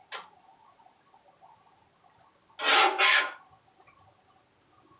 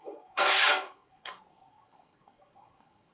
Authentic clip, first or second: first